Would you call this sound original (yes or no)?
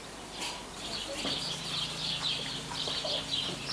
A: yes